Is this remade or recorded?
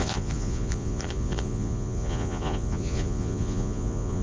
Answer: remade